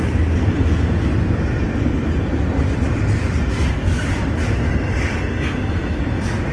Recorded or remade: recorded